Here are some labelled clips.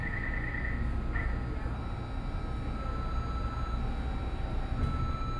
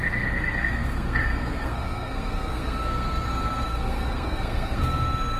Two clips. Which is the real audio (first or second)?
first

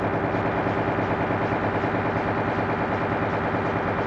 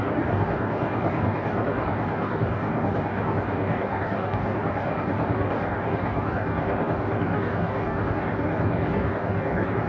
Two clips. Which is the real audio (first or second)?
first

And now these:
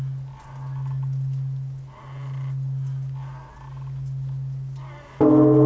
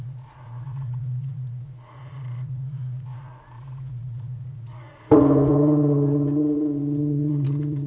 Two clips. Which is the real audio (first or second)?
first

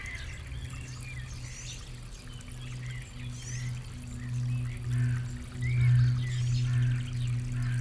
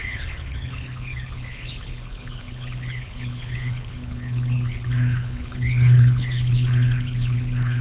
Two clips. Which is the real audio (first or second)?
first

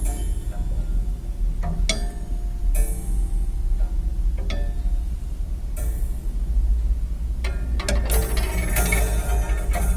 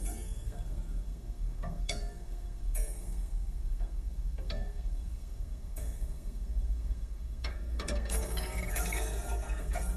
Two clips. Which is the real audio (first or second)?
first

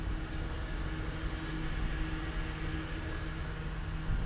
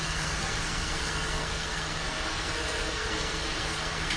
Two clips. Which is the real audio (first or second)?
first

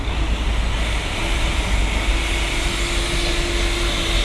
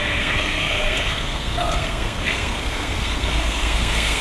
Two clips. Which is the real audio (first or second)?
first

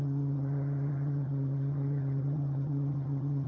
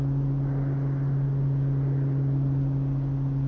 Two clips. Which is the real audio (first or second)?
second